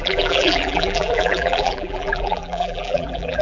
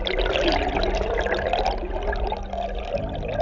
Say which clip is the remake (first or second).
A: first